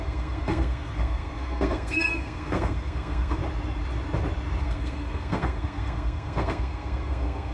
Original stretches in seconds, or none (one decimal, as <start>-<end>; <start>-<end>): 3.4-4.6